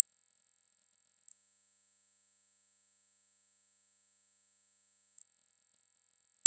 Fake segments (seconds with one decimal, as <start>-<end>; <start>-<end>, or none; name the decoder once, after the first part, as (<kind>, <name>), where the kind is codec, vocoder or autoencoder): 1.3-5.2 (autoencoder, DAC-VAE)